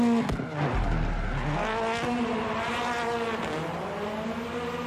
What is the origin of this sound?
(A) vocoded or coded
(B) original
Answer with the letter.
B